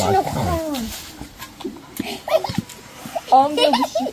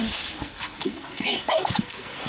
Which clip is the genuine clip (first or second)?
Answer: first